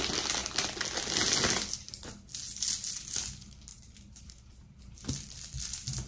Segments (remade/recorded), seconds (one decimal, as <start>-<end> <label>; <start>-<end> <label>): 0.0-3.7 recorded; 3.7-4.8 remade; 4.8-6.1 recorded